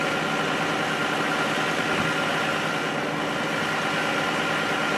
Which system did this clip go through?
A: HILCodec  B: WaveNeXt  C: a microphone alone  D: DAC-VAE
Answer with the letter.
C